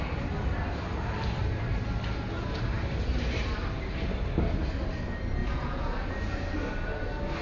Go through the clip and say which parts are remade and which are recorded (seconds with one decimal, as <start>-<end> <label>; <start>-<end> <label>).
0.0-5.4 recorded; 5.4-6.3 remade; 6.3-7.4 recorded